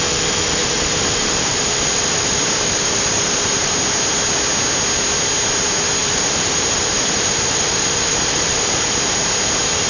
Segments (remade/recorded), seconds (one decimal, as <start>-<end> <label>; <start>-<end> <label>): 0.0-0.6 recorded; 0.6-3.7 remade; 3.7-6.0 recorded; 6.0-8.7 remade; 8.7-9.9 recorded